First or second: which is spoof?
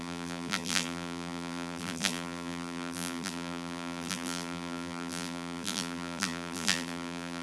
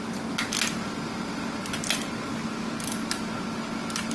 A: first